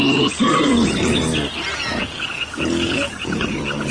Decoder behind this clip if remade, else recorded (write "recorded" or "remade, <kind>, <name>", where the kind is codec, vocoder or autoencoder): recorded